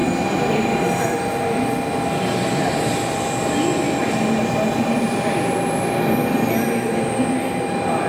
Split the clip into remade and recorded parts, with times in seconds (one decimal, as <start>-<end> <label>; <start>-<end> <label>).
0.0-8.1 recorded